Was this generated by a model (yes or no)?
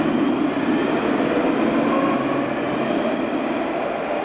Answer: no